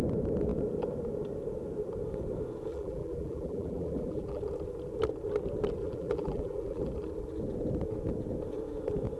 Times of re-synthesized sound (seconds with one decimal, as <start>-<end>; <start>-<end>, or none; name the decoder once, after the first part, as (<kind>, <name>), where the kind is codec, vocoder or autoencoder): 2.7-4.4 (vocoder, BigVGAN v2); 5.8-6.9